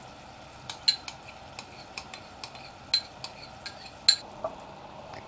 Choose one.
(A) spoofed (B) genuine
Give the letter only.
B